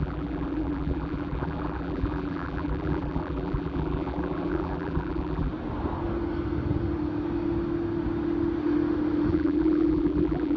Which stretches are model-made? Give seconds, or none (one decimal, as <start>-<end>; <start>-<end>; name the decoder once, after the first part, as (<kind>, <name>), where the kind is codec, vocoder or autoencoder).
0.0-5.5 (vocoder, BigVGAN v2); 9.3-10.6